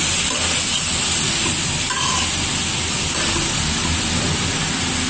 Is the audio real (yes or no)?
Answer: yes